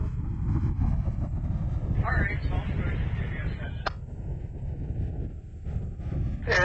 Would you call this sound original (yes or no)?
yes